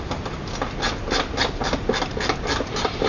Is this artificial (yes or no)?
no